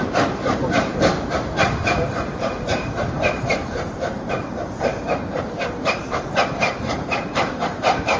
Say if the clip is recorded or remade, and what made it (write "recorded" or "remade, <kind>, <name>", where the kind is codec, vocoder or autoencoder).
remade, vocoder, BigVGAN v2